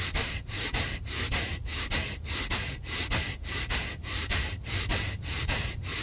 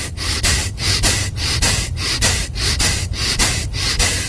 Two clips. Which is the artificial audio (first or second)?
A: first